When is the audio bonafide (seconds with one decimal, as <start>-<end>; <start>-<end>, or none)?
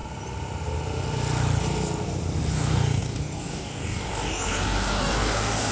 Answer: 0.0-2.5